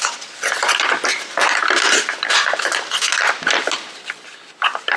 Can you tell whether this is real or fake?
real